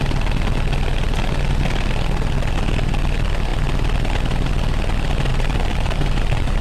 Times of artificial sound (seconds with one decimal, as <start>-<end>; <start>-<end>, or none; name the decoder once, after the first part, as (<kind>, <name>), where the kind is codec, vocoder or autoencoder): 5.3-6.6 (vocoder, BigVGAN v2)